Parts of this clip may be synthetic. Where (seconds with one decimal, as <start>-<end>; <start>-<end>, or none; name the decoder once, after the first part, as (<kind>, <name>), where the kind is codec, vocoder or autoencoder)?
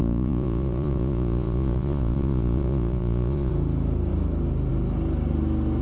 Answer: 0.0-3.5 (vocoder, Vocos)